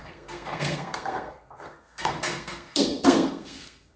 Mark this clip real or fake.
fake